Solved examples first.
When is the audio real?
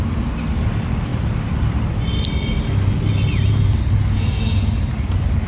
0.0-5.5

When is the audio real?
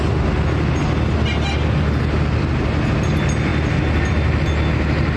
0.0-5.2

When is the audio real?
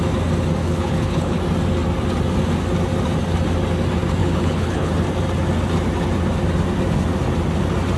0.0-0.6; 1.4-4.2; 4.9-8.0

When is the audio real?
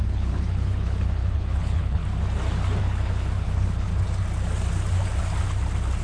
2.0-2.8; 3.9-6.0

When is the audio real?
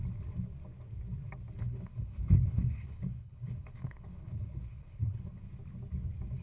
0.0-1.6; 5.4-6.4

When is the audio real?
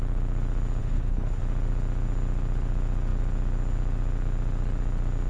0.0-0.8; 1.4-5.3